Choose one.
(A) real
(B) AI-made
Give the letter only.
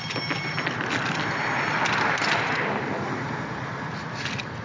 A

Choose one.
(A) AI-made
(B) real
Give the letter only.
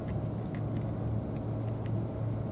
B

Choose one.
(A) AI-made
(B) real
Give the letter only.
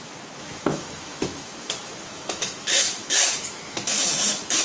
A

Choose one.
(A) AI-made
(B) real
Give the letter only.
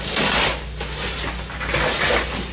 B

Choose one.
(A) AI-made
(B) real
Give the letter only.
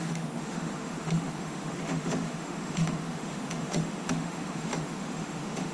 A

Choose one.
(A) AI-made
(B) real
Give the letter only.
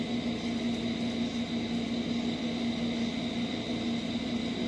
B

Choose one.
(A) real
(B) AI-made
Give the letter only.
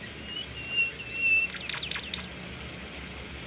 A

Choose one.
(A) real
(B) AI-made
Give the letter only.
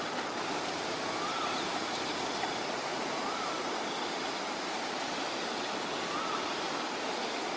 B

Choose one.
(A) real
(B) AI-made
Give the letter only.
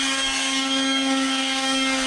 B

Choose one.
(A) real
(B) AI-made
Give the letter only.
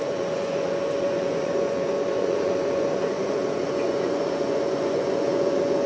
B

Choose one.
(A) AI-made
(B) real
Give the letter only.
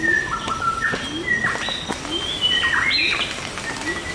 B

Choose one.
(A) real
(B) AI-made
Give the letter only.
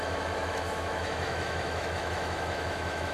B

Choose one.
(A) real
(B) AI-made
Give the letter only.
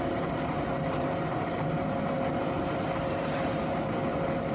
B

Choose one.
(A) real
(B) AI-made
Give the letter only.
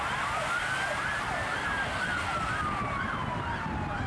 A